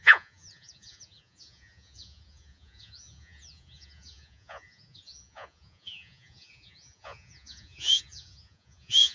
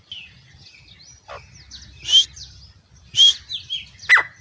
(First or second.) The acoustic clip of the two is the second